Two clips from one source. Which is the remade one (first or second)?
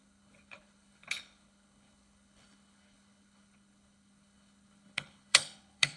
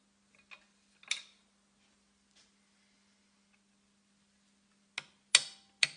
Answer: first